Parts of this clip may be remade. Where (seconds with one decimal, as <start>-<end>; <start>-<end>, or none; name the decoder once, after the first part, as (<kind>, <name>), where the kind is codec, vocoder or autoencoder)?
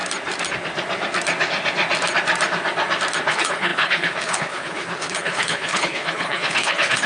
3.3-7.1 (codec, HILCodec)